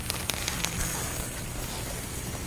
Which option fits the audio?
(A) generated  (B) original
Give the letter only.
B